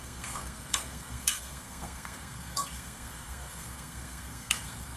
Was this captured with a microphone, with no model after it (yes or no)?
no